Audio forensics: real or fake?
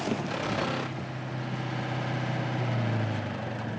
real